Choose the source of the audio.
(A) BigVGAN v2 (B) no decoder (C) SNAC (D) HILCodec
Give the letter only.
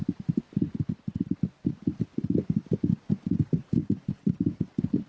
B